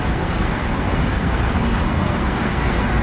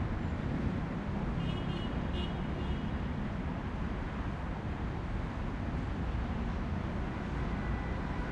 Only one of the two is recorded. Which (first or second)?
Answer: second